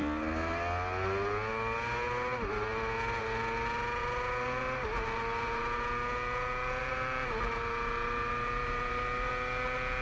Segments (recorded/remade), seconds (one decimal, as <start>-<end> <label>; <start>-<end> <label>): 0.0-4.0 recorded; 4.0-5.6 remade; 5.6-6.8 recorded; 6.8-9.3 remade; 9.3-10.0 recorded